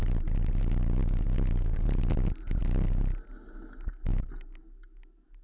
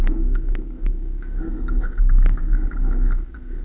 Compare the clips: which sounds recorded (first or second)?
first